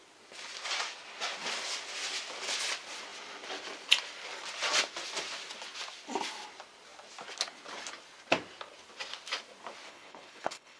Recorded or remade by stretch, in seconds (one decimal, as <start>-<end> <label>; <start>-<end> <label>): 0.0-9.9 recorded; 9.9-10.8 remade